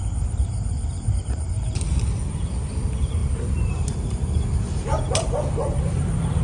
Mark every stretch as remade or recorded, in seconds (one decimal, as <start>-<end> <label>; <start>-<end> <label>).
0.0-6.4 remade